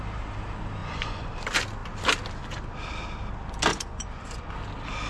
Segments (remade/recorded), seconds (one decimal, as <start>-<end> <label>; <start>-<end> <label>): 0.0-0.8 recorded; 0.8-1.3 remade; 1.3-3.7 recorded; 3.7-4.5 remade; 4.5-5.1 recorded